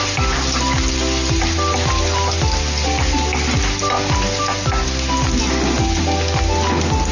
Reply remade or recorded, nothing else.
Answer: recorded